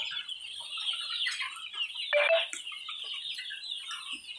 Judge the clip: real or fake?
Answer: real